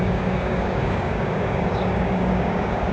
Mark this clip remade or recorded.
remade